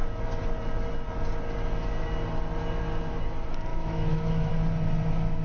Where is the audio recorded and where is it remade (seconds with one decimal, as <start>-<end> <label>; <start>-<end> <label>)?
0.0-3.7 recorded; 3.7-4.5 remade; 4.5-5.4 recorded